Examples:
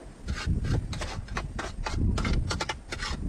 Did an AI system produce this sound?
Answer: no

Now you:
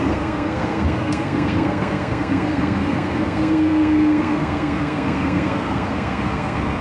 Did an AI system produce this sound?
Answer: yes